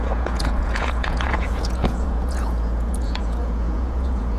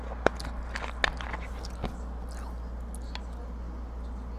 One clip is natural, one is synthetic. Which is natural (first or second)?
second